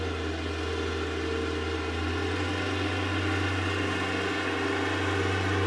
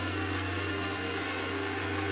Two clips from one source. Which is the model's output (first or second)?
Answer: second